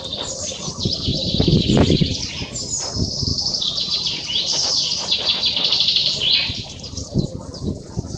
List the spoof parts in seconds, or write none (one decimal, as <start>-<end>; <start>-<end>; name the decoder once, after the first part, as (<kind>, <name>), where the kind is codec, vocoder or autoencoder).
1.1-2.3 (vocoder, BigVGAN v2); 3.3-4.2; 6.0-7.3